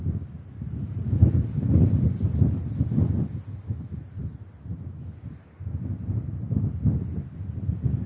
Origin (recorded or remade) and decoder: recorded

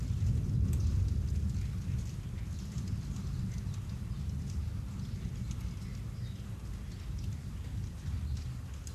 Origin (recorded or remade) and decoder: recorded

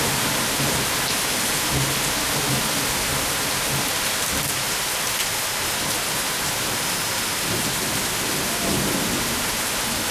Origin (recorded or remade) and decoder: recorded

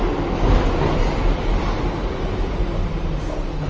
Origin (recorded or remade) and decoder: recorded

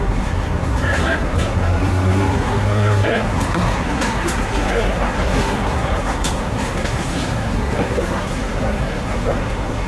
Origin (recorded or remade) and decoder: remade, codec, SNAC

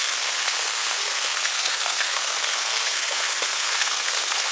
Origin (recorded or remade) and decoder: remade, codec, SNAC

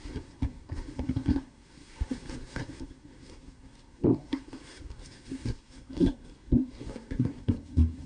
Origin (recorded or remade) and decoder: remade, codec, SNAC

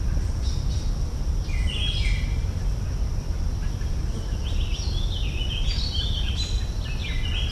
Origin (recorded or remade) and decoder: recorded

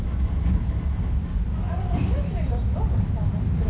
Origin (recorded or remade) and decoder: recorded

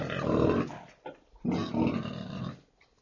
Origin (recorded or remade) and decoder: recorded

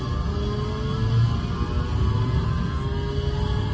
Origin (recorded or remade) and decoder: recorded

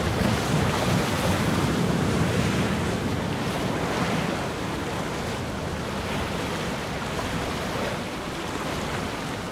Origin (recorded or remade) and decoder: recorded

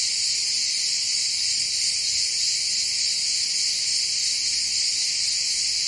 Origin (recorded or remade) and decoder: recorded